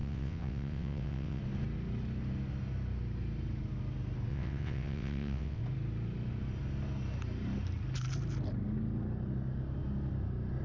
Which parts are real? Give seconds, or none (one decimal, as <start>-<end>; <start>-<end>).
1.4-4.3; 5.6-10.6